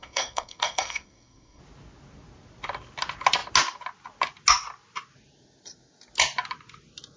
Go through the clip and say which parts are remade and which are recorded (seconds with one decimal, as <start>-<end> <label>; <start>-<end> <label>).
0.0-1.6 remade; 1.6-7.2 recorded